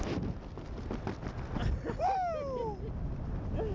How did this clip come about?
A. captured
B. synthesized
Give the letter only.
A